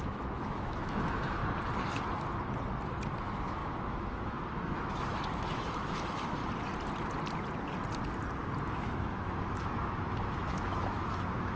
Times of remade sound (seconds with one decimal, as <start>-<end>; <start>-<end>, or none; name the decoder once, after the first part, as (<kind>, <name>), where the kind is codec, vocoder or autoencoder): 0.0-1.4 (autoencoder, DAC-VAE); 3.2-6.4; 8.7-11.6